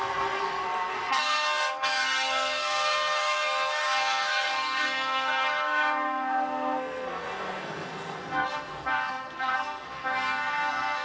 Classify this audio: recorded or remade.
remade